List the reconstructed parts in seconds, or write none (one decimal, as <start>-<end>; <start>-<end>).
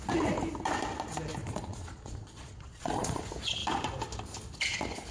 1.4-3.2